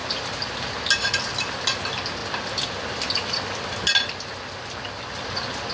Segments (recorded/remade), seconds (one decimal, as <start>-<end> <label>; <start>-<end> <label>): 0.0-5.7 recorded